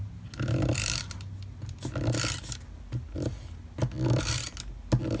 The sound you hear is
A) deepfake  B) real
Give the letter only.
B